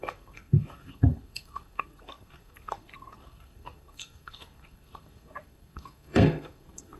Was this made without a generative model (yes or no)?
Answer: no